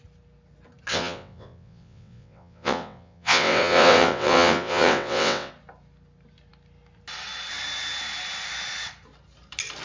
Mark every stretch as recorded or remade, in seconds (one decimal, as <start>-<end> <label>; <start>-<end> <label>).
0.0-0.9 recorded; 0.9-5.5 remade; 5.5-9.8 recorded